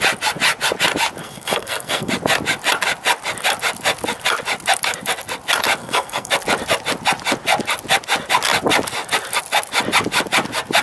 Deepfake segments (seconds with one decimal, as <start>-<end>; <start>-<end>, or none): 1.2-2.1; 5.8-6.3